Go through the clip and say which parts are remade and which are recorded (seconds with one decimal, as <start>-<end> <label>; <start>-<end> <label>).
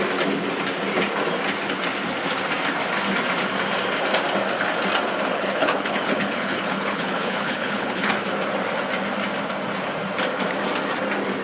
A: 0.0-5.3 recorded; 5.3-8.1 remade; 8.1-11.4 recorded